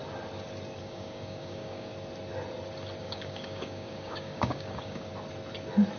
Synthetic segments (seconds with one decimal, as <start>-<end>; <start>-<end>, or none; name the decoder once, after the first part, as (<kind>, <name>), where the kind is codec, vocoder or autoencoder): 0.8-1.9 (codec, DAC); 3.0-5.1